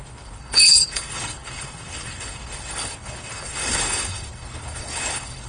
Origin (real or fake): fake